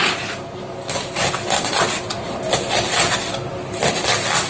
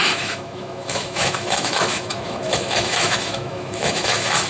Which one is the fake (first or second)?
second